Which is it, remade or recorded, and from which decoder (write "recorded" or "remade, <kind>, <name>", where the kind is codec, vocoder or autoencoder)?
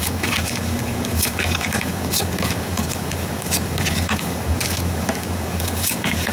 remade, codec, DAC